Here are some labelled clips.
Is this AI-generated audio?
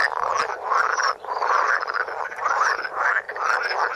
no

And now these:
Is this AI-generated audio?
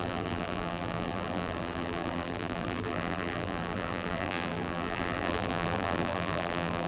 yes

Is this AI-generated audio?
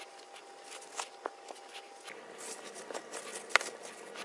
no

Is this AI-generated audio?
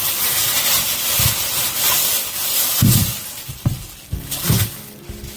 no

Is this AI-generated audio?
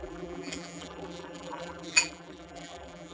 yes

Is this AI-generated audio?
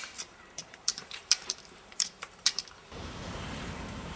yes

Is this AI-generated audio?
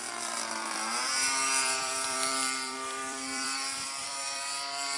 yes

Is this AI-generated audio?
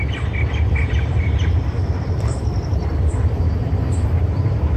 yes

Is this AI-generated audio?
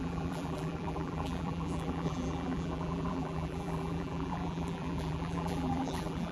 yes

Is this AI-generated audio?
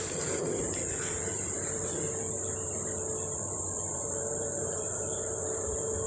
yes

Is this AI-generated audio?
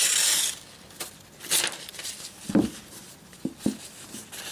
no